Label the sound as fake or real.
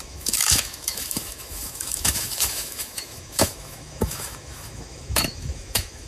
fake